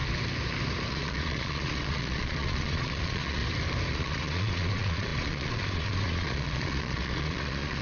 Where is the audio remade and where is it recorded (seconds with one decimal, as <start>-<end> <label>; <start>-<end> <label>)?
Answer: 0.0-0.9 recorded; 0.9-3.4 remade; 3.4-3.9 recorded; 3.9-7.8 remade

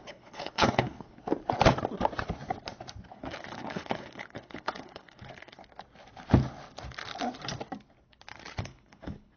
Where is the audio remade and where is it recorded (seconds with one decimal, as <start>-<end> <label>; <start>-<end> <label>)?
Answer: 0.0-1.2 remade; 1.2-3.1 recorded; 3.1-5.6 remade; 5.6-8.6 recorded; 8.6-9.4 remade

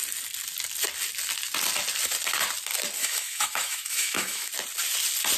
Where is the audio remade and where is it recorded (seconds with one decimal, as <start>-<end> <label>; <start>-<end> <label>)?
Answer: 0.0-3.0 recorded; 3.0-4.5 remade; 4.5-5.4 recorded

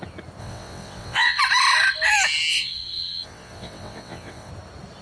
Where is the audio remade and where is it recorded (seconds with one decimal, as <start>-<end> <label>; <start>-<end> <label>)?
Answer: 0.0-0.4 recorded; 0.4-1.4 remade; 1.4-2.5 recorded; 2.5-4.5 remade; 4.5-5.0 recorded

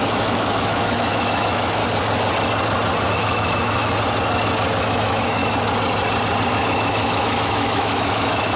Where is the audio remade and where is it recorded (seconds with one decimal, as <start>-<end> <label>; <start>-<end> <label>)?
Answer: 0.0-1.8 remade; 1.8-3.1 recorded; 3.1-3.8 remade; 3.8-4.8 recorded; 4.8-5.4 remade; 5.4-6.5 recorded; 6.5-8.6 remade